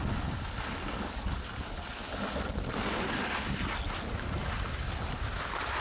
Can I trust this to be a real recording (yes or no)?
yes